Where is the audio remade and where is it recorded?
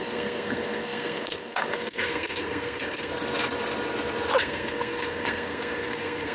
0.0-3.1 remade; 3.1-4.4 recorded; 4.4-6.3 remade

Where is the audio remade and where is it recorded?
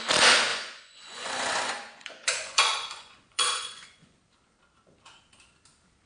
0.0-0.5 recorded; 0.5-4.2 remade; 4.2-6.1 recorded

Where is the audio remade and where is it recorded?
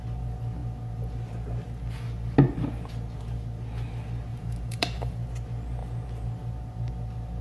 0.0-4.3 recorded; 4.3-5.1 remade; 5.1-7.4 recorded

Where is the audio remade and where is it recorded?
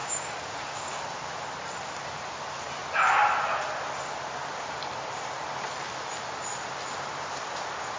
0.0-1.0 remade; 1.0-8.0 recorded